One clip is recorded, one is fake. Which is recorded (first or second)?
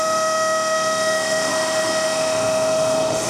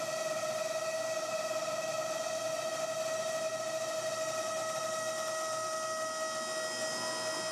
second